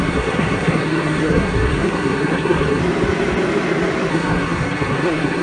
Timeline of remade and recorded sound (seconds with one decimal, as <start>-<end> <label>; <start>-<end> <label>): 0.0-2.8 remade; 2.8-4.1 recorded; 4.1-5.4 remade